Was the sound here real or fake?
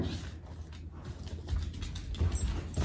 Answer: real